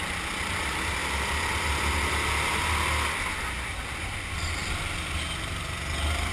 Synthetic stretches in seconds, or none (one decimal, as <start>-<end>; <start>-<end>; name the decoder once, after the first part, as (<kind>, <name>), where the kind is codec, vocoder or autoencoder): none